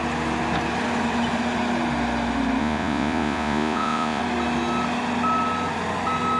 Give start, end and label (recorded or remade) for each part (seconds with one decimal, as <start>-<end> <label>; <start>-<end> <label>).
0.0-2.6 recorded; 2.6-4.2 remade; 4.2-6.4 recorded